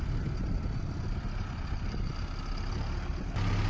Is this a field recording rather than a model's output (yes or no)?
yes